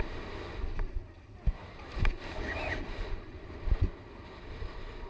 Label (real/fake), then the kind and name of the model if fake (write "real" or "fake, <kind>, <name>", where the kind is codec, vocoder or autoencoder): real